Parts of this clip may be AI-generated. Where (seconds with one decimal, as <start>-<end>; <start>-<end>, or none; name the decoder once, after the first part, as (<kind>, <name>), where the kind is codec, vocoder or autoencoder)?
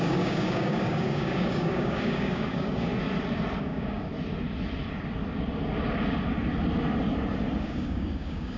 0.0-2.9 (codec, DAC); 3.6-4.1; 7.6-8.6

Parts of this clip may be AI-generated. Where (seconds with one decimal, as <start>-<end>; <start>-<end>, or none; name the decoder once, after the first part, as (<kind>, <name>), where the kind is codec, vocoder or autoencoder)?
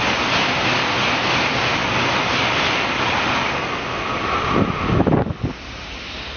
none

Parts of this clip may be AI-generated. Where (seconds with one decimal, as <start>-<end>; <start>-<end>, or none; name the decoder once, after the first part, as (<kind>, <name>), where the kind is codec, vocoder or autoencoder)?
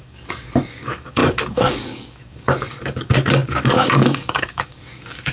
0.0-5.3 (codec, DAC)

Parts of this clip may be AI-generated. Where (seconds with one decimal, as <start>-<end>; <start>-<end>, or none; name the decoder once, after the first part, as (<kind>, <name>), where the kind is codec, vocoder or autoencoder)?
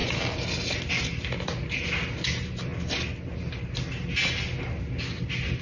none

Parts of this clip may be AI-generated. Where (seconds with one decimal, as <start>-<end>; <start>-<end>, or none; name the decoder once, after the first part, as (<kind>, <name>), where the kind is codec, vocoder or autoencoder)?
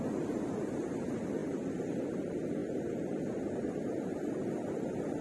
0.0-5.2 (vocoder, BigVGAN v2)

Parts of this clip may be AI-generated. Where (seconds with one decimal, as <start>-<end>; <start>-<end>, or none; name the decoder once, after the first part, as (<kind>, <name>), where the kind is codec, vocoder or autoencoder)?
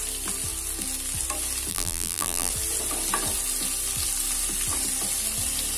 1.7-2.5 (vocoder, BigVGAN v2)